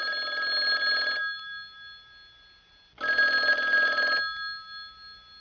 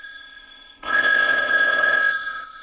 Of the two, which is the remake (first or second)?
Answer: second